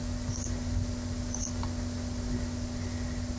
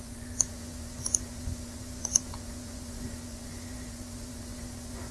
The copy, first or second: second